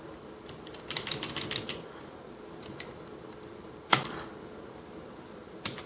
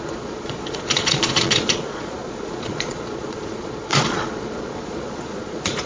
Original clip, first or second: first